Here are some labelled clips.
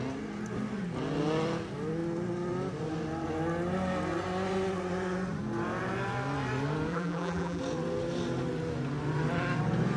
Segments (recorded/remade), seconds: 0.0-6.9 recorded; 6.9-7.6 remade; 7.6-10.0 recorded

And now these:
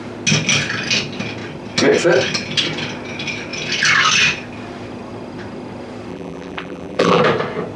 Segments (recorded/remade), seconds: 0.0-6.1 recorded; 6.1-7.2 remade; 7.2-7.8 recorded

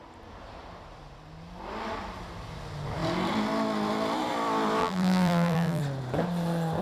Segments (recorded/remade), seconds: 0.0-4.8 recorded; 4.8-5.8 remade; 5.8-6.8 recorded

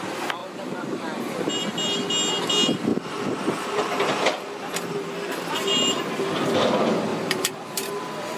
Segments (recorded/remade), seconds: 0.0-0.4 recorded; 0.4-1.5 remade; 1.5-2.9 recorded; 2.9-6.0 remade; 6.0-7.1 recorded; 7.1-8.0 remade; 8.0-8.4 recorded

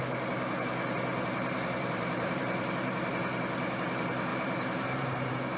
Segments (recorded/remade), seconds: 0.0-1.1 recorded; 1.1-3.1 remade; 3.1-4.3 recorded; 4.3-5.6 remade

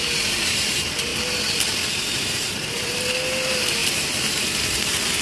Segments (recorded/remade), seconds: 0.0-1.1 remade; 1.1-2.2 recorded; 2.2-5.2 remade

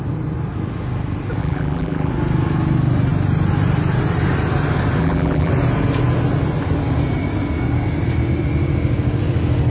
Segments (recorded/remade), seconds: 0.0-1.4 recorded; 1.4-2.1 remade; 2.1-5.0 recorded; 5.0-5.5 remade; 5.5-9.7 recorded

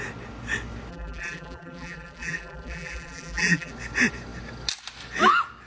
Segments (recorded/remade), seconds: 0.0-0.9 recorded; 0.9-3.7 remade; 3.7-5.7 recorded